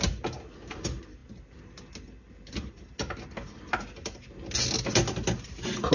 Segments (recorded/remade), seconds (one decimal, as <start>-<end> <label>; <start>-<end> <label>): 0.0-5.9 recorded